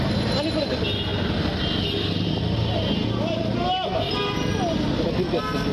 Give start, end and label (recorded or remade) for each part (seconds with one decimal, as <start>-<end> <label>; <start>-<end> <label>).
0.0-5.7 recorded